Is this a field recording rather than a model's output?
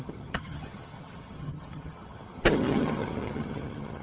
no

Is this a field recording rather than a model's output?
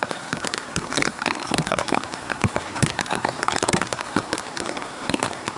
no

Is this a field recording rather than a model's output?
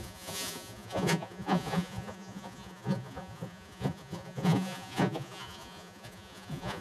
no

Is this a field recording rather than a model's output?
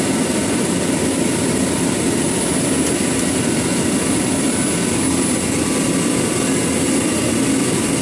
yes